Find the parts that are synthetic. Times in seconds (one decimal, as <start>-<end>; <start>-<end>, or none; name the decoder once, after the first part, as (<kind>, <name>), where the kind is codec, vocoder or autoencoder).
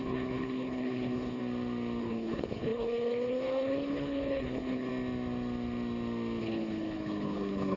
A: 0.0-1.4 (codec, HILCodec); 2.0-4.9; 6.4-7.8